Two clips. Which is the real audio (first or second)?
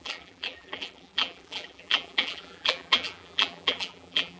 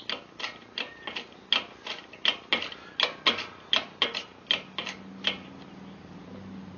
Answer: second